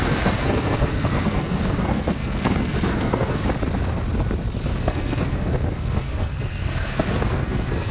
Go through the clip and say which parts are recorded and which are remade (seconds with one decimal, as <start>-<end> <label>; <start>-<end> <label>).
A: 0.0-3.4 remade; 3.4-4.8 recorded; 4.8-7.9 remade